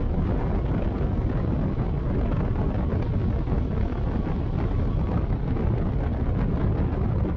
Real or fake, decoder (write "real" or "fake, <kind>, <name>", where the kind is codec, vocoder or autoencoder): real